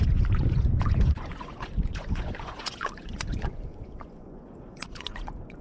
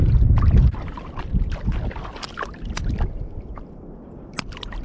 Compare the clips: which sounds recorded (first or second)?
second